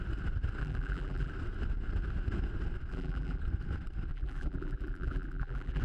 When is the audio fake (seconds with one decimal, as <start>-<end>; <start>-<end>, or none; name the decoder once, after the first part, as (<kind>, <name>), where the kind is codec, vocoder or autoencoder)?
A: 0.6-1.3 (vocoder, BigVGAN v2); 2.9-3.4; 4.1-5.8